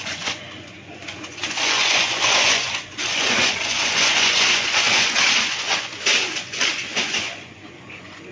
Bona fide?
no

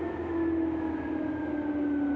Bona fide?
yes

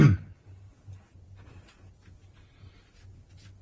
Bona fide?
yes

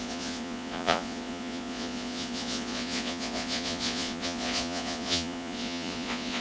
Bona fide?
no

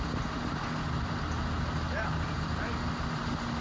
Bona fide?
yes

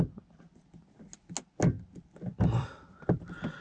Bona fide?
yes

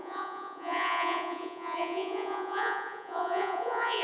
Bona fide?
no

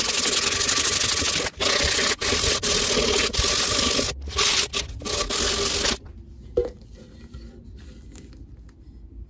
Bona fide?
yes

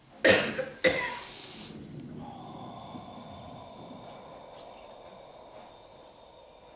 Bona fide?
yes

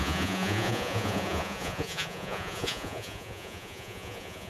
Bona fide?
no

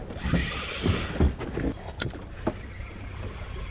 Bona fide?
yes